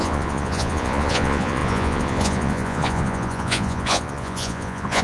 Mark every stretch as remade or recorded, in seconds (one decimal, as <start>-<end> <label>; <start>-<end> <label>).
0.0-5.0 remade